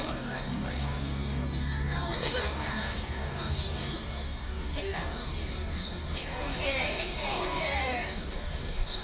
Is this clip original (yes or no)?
no